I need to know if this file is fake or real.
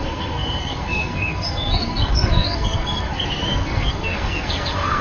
fake